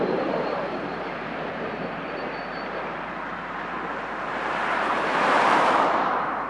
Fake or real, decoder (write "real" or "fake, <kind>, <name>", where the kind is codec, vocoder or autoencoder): fake, vocoder, BigVGAN v2